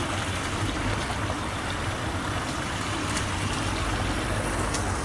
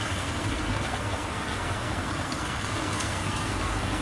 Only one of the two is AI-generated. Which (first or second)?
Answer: second